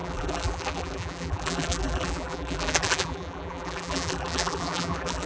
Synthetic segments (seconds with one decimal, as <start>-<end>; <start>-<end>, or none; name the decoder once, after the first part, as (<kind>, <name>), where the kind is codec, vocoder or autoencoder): 0.0-5.3 (vocoder, BigVGAN v2)